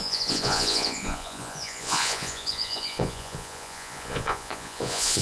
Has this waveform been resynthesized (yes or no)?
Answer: yes